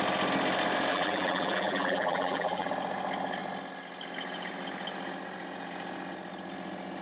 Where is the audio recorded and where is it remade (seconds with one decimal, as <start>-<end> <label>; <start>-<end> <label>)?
0.0-0.9 recorded; 0.9-2.7 remade; 2.7-7.0 recorded